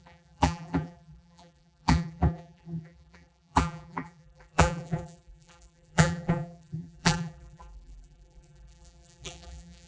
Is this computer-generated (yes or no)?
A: yes